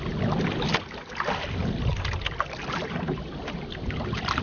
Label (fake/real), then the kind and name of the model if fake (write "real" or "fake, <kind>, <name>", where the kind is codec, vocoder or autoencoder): real